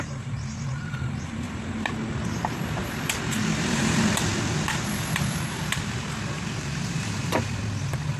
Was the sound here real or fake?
fake